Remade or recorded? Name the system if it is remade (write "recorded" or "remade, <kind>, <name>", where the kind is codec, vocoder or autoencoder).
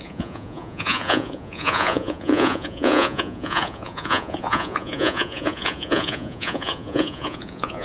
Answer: remade, vocoder, Vocos